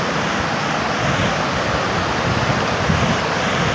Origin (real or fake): real